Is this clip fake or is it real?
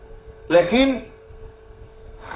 fake